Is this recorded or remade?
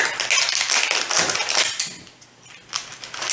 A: recorded